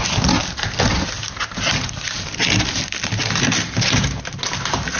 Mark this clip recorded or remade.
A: recorded